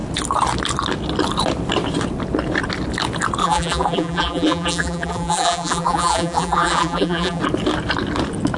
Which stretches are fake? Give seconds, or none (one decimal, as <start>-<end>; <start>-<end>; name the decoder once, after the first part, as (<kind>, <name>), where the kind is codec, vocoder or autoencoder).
3.4-7.4 (vocoder, BigVGAN v2)